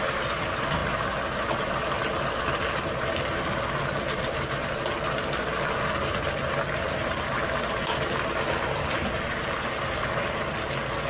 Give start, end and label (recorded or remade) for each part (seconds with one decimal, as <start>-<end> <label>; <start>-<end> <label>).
0.0-11.1 recorded